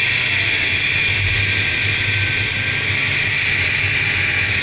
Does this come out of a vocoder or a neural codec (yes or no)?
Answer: no